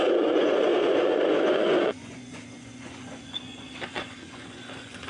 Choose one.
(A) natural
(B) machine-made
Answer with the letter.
B